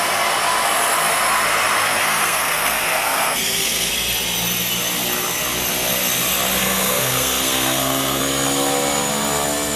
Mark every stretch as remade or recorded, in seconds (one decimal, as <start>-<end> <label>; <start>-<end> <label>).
0.0-2.0 recorded; 2.0-3.9 remade; 3.9-6.6 recorded; 6.6-8.2 remade; 8.2-9.8 recorded